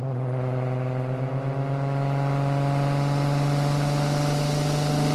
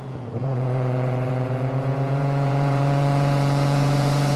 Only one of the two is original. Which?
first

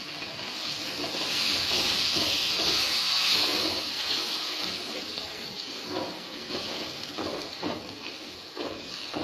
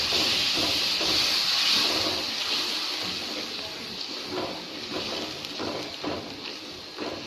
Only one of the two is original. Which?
second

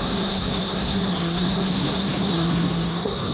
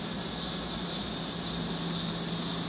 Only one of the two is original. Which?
second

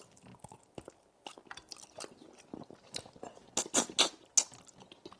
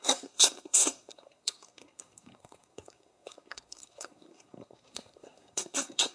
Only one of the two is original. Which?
first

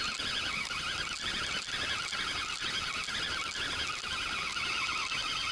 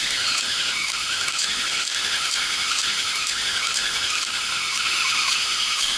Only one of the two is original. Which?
first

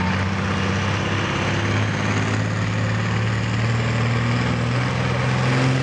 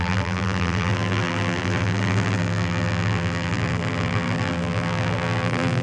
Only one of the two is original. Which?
first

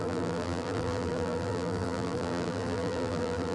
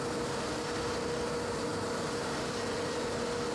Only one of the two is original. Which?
second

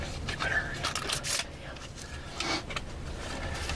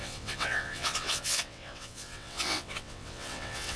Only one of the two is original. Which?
first